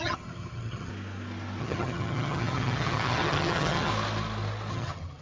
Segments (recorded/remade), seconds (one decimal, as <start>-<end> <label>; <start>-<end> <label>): 0.0-0.9 remade; 0.9-1.6 recorded; 1.6-3.9 remade; 3.9-4.7 recorded; 4.7-5.2 remade